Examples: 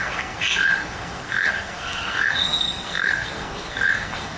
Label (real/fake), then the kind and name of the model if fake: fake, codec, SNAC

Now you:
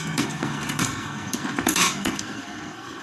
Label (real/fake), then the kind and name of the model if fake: fake, codec, SNAC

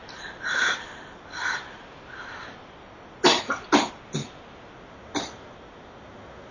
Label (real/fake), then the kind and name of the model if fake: real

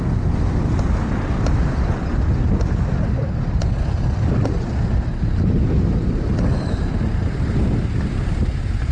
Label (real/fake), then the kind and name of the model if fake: real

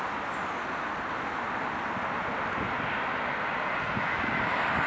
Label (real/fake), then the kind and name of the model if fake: real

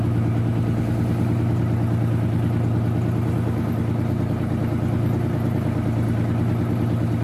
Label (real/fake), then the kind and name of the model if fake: real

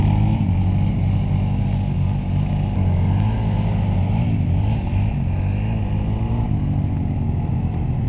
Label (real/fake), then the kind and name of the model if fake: real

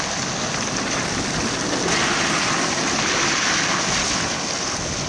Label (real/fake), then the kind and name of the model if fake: real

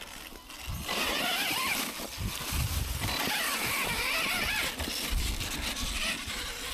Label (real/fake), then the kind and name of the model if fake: real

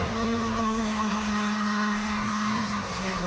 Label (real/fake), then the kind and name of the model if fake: fake, codec, SNAC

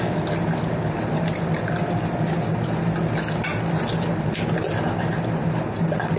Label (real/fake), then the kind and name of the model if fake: real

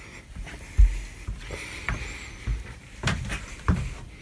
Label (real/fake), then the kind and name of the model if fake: real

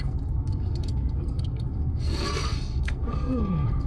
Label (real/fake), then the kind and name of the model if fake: fake, codec, SNAC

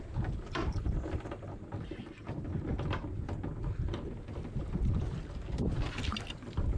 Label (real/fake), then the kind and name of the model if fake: real